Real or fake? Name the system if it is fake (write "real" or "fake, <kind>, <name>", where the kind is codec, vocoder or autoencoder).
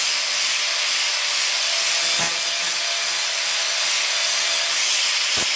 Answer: real